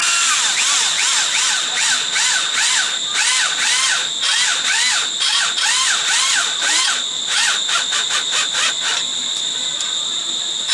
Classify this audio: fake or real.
real